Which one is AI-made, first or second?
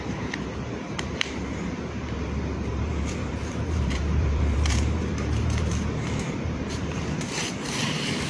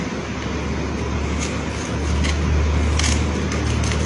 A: first